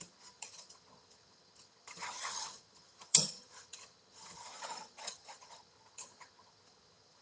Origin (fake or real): fake